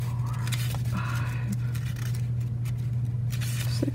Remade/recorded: recorded